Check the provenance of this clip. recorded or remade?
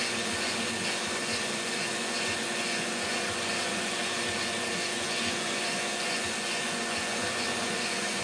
remade